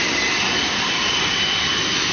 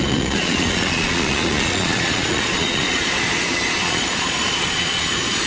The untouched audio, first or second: first